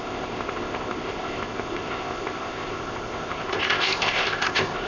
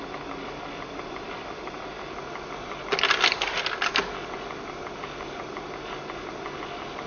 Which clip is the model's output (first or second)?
first